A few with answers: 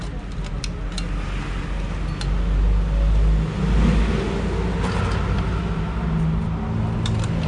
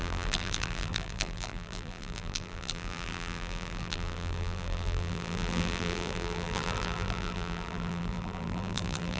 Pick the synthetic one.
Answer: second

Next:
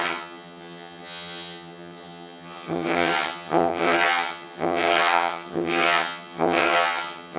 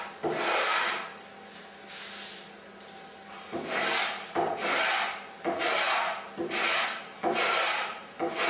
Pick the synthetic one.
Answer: first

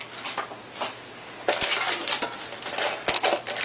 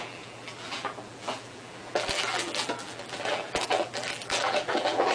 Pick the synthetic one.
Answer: second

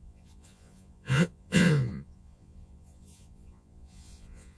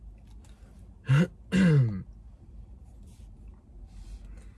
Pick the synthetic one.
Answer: first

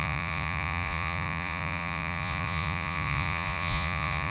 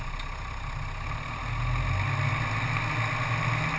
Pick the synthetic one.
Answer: first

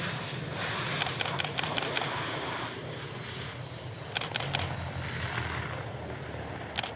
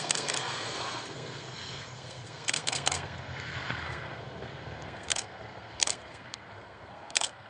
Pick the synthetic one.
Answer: second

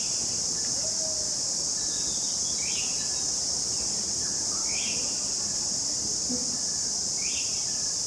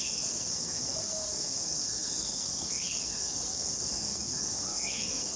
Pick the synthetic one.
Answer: second